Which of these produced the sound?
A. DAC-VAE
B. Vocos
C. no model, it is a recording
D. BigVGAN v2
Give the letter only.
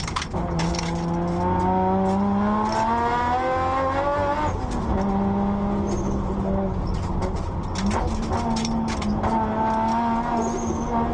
C